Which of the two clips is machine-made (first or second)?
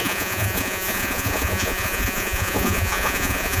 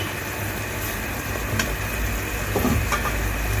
first